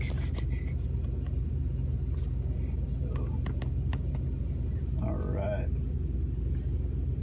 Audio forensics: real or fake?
real